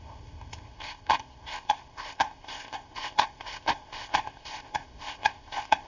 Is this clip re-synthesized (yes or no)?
yes